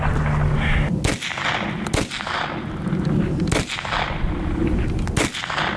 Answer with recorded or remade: recorded